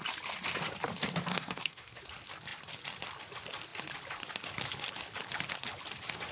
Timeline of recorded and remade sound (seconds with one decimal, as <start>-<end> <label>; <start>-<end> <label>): 0.0-1.3 recorded; 1.3-2.0 remade; 2.0-6.3 recorded

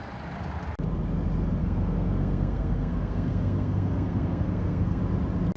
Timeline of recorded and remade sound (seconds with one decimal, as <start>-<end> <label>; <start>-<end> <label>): 0.0-1.6 recorded; 1.6-5.0 remade; 5.0-5.6 recorded

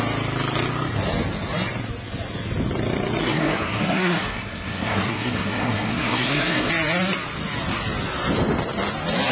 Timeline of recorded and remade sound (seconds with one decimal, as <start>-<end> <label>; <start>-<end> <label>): 0.0-3.2 recorded; 3.2-6.7 remade; 6.7-9.3 recorded

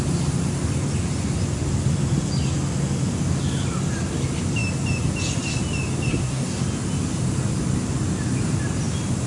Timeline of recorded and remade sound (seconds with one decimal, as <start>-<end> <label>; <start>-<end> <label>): 0.0-6.1 recorded; 6.1-6.6 remade; 6.6-9.3 recorded

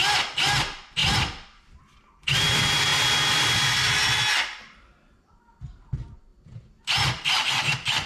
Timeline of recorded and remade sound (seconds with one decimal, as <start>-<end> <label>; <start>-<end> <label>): 0.0-8.1 recorded